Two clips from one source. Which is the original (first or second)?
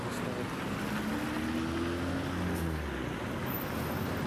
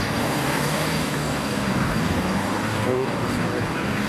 first